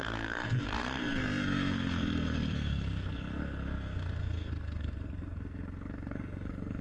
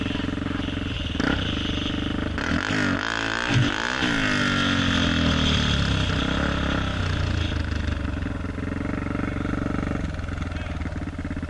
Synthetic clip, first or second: first